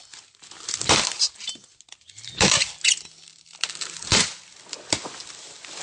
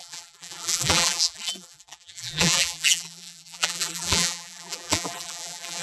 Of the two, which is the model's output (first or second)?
second